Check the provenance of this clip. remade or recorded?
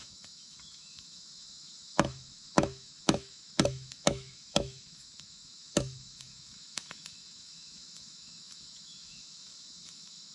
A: remade